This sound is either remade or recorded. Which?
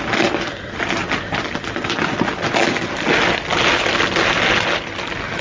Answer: recorded